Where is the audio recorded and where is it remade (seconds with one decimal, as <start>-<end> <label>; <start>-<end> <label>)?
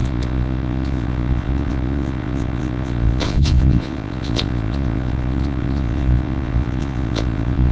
0.0-7.7 remade